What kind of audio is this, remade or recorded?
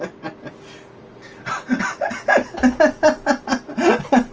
recorded